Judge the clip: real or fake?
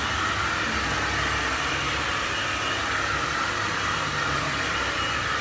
real